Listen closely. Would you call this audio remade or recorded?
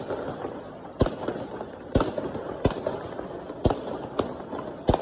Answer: remade